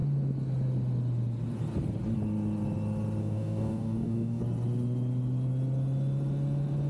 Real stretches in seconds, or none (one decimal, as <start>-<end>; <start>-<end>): 0.0-3.2; 4.4-6.9